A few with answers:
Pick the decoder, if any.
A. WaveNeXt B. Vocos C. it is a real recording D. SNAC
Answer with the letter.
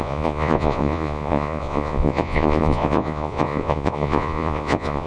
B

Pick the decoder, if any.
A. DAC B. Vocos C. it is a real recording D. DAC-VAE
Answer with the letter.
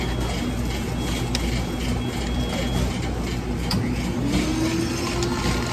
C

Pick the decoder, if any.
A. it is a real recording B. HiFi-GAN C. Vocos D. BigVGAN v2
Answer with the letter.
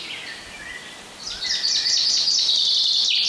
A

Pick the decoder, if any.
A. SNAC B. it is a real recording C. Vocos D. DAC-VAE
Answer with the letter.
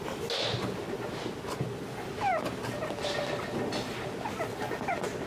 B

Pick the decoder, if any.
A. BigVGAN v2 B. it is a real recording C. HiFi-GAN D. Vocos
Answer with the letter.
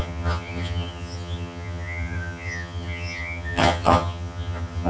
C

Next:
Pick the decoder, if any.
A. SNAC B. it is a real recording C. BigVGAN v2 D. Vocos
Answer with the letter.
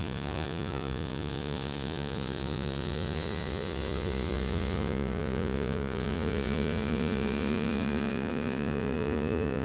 D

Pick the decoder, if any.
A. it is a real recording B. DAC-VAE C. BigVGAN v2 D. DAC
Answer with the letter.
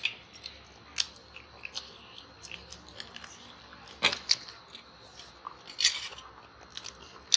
A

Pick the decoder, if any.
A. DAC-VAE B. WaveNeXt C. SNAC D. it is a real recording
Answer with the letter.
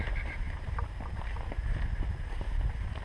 D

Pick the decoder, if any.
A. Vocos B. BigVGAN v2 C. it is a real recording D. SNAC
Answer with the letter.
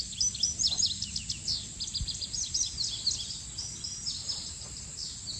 C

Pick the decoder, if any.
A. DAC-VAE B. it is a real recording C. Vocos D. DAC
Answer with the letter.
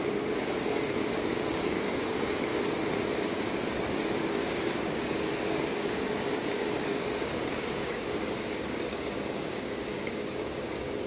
D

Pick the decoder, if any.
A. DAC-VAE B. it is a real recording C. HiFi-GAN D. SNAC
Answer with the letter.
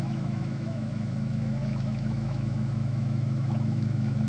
A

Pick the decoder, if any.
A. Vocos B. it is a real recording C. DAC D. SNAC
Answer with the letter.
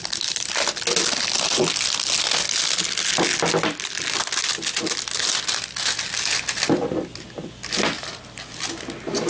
B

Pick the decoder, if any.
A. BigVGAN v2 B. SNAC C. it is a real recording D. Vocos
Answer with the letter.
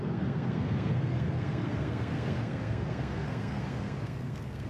B